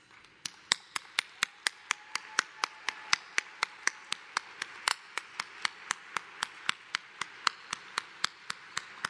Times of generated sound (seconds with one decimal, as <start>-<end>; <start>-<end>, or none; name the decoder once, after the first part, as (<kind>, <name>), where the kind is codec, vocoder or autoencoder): 4.9-5.4 (vocoder, Vocos)

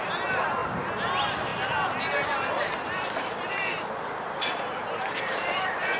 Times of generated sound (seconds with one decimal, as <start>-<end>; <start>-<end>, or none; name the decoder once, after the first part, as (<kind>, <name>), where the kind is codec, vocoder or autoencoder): none